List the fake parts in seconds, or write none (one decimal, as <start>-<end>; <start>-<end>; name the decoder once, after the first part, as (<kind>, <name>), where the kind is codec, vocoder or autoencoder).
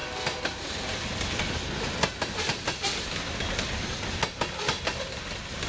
none